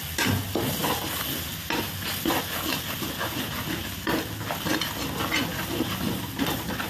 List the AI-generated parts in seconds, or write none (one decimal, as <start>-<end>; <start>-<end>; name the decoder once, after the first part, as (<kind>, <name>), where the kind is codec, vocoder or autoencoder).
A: none